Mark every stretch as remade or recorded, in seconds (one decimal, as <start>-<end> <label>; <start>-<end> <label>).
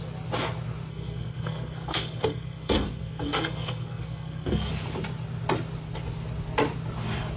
0.0-0.9 recorded; 0.9-4.7 remade; 4.7-7.4 recorded